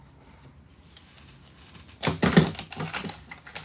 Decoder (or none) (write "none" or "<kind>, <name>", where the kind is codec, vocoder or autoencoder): none